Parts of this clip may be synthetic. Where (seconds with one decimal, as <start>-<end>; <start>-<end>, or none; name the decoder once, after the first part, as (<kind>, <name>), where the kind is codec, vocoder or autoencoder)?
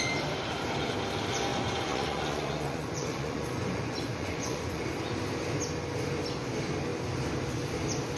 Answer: 1.5-4.8 (vocoder, Vocos)